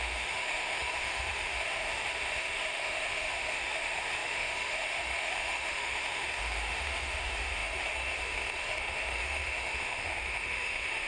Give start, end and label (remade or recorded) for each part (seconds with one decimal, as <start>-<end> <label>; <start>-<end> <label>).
0.0-11.1 remade